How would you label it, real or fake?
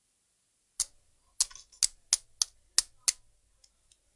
real